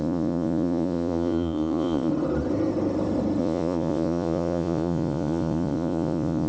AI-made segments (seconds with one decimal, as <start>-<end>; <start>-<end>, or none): 0.0-2.1; 3.4-6.5